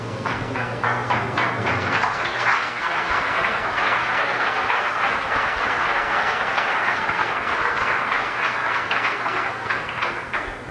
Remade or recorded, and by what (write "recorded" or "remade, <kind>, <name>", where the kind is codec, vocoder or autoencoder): remade, codec, SNAC